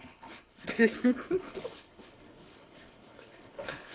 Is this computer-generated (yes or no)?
yes